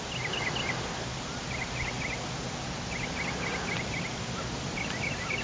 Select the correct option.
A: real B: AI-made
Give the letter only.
A